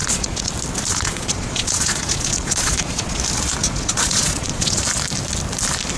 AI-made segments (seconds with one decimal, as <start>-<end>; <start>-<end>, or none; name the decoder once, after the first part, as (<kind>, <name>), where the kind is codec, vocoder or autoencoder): 0.0-0.5 (vocoder, Vocos); 0.9-3.2; 3.6-4.8